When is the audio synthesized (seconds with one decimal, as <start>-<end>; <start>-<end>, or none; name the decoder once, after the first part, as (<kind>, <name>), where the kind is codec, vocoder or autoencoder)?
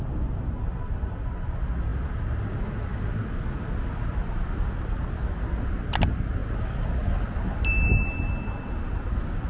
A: none